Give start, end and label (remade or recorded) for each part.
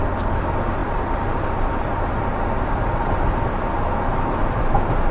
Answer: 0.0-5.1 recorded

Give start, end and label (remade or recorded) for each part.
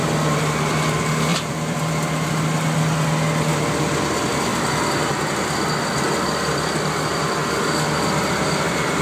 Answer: 0.0-1.3 recorded; 1.3-2.3 remade; 2.3-3.5 recorded; 3.5-4.0 remade; 4.0-7.4 recorded; 7.4-9.0 remade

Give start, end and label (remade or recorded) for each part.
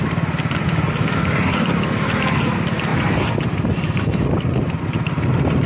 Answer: 0.0-5.7 recorded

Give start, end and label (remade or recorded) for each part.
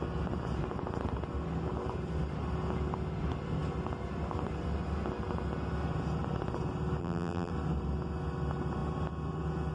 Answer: 0.0-7.0 recorded; 7.0-7.5 remade; 7.5-9.7 recorded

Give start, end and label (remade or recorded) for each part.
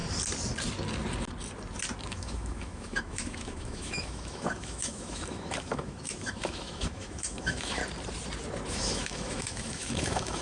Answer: 0.0-2.1 recorded; 2.1-7.8 remade; 7.8-8.7 recorded; 8.7-10.4 remade